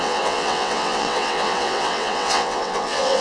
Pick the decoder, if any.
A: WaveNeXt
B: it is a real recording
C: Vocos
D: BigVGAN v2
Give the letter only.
A